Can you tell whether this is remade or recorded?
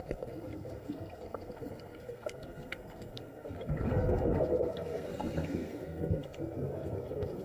remade